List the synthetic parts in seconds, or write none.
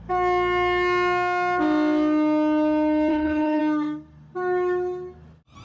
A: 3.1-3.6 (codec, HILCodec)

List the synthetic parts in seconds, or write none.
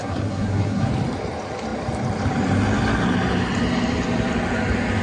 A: 0.0-0.9 (codec, SNAC)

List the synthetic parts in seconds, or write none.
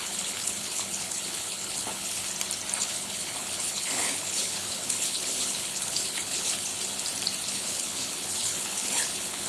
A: 0.0-2.2 (codec, HILCodec); 2.8-6.7; 7.4-9.5